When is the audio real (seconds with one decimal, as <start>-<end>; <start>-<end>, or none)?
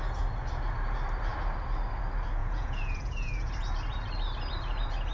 0.0-2.4; 3.5-5.1